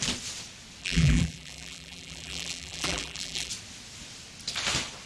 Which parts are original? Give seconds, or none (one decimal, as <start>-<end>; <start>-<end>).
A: 0.0-0.8; 3.5-5.1